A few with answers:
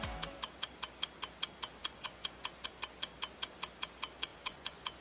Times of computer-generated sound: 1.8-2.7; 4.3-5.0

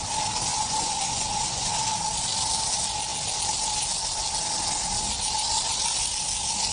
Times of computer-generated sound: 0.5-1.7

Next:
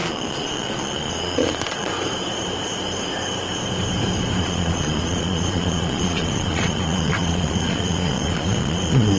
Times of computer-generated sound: 0.0-1.9; 4.4-9.2

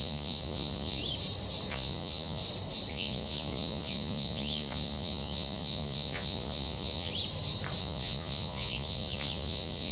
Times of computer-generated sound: 0.0-1.0; 1.7-2.4; 2.9-7.1; 7.8-9.9